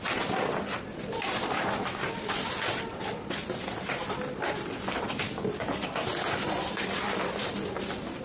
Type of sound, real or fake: real